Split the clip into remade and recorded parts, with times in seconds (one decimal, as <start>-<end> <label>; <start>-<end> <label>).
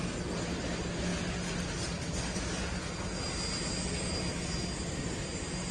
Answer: 0.0-5.7 recorded